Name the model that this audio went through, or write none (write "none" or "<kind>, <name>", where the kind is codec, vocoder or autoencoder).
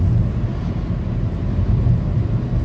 none